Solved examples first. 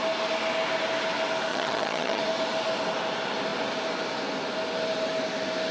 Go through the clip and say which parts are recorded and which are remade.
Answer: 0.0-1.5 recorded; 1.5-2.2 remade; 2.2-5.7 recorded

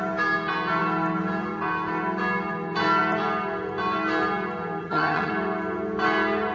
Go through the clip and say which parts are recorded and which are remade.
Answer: 0.0-4.8 recorded; 4.8-5.3 remade; 5.3-6.5 recorded

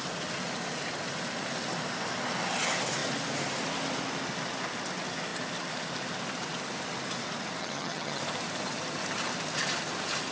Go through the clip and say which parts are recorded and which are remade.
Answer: 0.0-7.6 recorded; 7.6-8.2 remade; 8.2-10.3 recorded

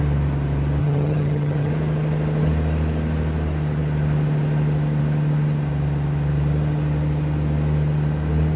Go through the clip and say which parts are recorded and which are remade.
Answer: 0.0-0.8 recorded; 0.8-1.7 remade; 1.7-8.6 recorded

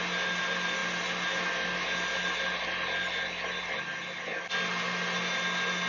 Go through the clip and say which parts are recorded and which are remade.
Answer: 0.0-5.9 recorded